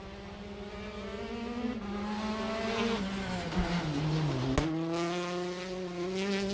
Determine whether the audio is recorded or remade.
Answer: recorded